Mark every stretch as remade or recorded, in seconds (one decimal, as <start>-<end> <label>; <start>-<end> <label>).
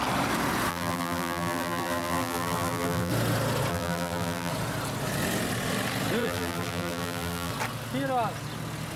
0.0-0.7 recorded; 0.7-3.1 remade; 3.1-3.7 recorded; 3.7-4.5 remade; 4.5-6.2 recorded; 6.2-7.5 remade; 7.5-9.0 recorded